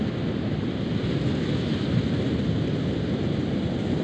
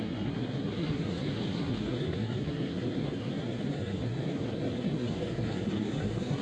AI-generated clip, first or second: second